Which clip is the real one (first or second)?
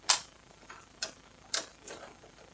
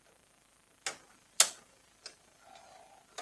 second